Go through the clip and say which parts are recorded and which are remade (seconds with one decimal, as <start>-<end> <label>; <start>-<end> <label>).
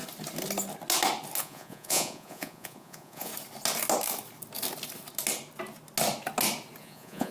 0.0-1.4 recorded; 1.4-3.3 remade; 3.3-6.8 recorded; 6.8-7.3 remade